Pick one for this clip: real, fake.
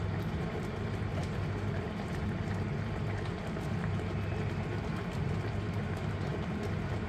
fake